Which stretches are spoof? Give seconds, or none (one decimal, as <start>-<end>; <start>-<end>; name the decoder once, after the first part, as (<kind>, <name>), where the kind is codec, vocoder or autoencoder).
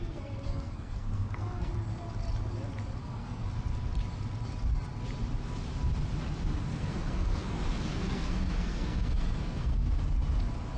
0.0-1.7 (codec, SNAC); 3.0-3.5; 6.7-10.0